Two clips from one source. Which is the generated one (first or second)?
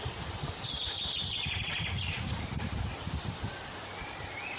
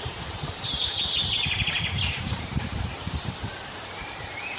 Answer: second